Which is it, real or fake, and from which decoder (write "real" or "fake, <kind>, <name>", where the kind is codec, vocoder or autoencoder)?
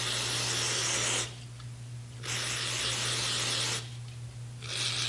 real